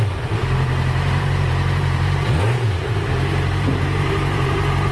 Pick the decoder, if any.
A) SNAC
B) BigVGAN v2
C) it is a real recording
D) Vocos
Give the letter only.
B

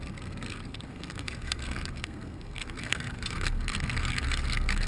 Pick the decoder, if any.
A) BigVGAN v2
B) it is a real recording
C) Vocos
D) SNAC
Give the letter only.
D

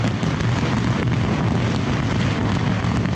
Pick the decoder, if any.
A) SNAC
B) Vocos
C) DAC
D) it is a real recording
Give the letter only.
D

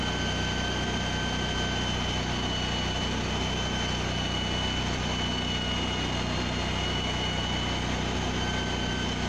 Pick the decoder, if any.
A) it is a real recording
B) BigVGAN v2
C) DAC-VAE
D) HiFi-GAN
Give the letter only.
A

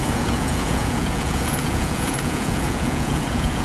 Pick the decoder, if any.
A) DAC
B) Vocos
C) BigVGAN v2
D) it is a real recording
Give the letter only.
B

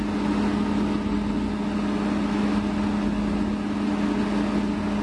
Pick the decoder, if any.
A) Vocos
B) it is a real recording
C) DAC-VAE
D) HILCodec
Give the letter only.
B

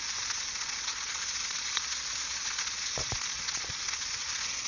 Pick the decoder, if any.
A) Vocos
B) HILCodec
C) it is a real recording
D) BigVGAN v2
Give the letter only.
A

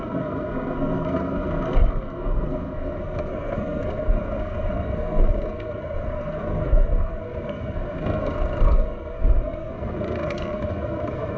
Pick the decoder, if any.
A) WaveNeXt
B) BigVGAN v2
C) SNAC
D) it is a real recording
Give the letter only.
C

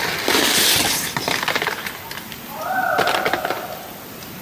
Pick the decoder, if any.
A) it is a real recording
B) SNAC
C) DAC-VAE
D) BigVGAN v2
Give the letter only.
A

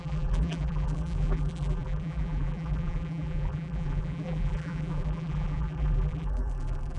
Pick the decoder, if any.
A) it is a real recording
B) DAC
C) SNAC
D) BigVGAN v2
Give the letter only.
D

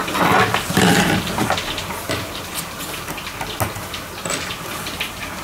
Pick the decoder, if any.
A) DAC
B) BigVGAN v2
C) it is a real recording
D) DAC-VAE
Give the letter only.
C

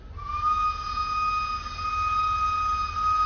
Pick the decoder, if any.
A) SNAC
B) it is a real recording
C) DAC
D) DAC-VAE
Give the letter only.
B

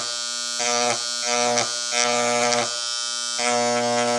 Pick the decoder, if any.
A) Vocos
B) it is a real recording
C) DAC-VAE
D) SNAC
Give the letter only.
B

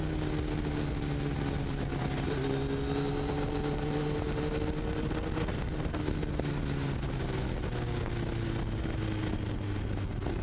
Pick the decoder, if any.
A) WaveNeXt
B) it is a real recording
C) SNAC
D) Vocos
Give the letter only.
B